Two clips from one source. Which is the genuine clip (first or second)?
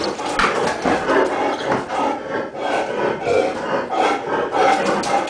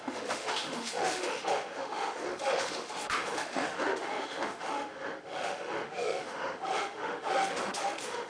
first